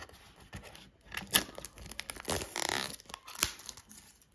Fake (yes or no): no